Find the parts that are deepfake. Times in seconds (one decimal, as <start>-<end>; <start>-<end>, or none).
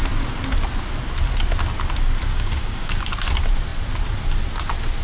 2.3-3.0